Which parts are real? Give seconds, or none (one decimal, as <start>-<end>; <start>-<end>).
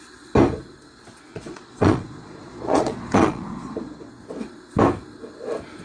0.0-1.3; 4.1-5.8